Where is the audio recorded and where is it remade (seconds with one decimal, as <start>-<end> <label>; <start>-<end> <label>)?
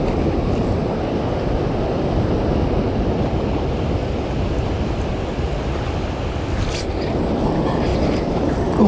0.0-8.9 recorded